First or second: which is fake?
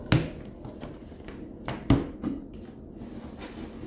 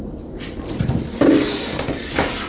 second